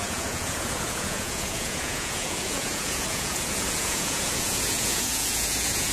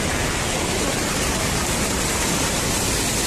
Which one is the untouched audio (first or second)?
second